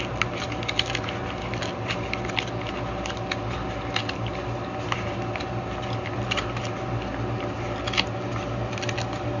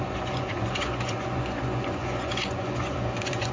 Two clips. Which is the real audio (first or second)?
first